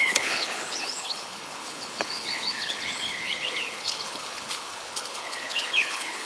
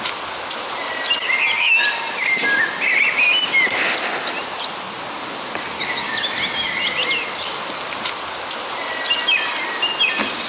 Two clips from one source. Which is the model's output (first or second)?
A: first